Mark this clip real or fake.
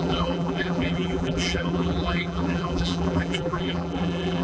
fake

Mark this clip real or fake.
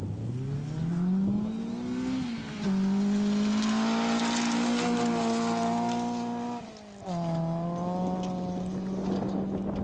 real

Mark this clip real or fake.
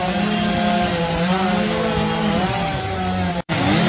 fake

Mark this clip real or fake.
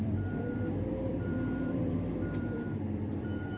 fake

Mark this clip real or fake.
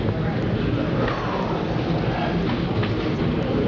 real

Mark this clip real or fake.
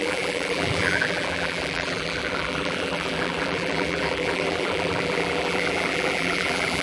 fake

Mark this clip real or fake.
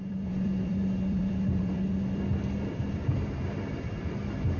fake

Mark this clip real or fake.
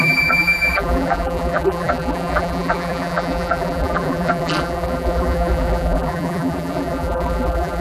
fake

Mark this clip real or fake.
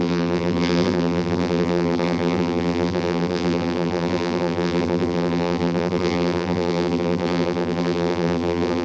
fake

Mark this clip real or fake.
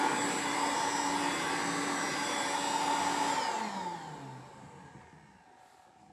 real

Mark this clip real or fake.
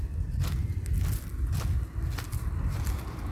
real